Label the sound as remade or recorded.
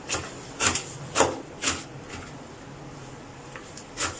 recorded